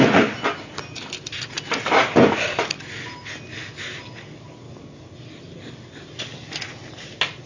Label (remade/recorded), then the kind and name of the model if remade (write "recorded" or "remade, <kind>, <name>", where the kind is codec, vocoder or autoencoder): recorded